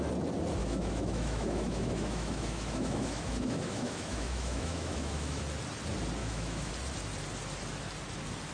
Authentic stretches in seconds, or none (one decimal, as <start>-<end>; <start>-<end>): 0.0-0.6; 5.4-6.2; 6.7-8.5